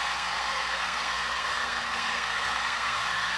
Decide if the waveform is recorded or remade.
remade